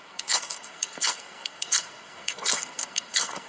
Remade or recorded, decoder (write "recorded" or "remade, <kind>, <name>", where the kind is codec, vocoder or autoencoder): remade, codec, SNAC